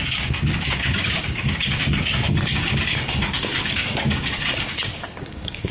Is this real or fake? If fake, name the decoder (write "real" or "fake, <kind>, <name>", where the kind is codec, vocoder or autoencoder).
fake, codec, DAC